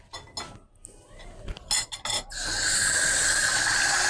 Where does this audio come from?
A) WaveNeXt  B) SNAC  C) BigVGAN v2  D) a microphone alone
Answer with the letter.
D